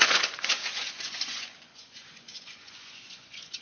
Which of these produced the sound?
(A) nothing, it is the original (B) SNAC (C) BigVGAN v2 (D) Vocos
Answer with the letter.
D